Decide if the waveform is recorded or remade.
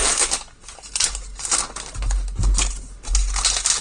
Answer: recorded